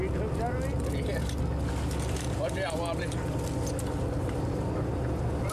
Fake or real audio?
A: real